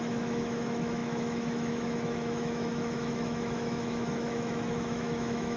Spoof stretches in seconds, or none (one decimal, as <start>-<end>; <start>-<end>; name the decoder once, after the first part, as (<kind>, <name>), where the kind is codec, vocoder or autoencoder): 0.0-5.6 (autoencoder, DAC-VAE)